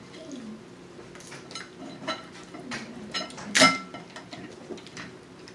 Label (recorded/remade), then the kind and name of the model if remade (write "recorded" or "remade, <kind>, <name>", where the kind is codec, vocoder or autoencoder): recorded